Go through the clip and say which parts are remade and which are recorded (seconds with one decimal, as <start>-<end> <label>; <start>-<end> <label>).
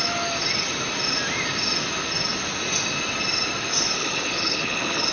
0.0-4.0 recorded; 4.0-5.1 remade